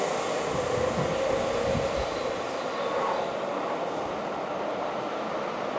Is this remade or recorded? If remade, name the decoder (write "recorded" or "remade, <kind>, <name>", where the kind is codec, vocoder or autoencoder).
recorded